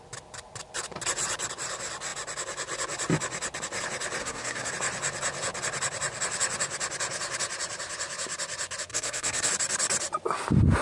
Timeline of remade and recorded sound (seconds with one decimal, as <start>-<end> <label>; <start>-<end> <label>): 0.0-4.2 recorded; 4.2-4.7 remade; 4.7-8.9 recorded; 8.9-9.5 remade; 9.5-10.8 recorded